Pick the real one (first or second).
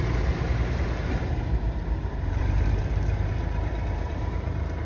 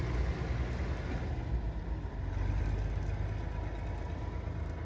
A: second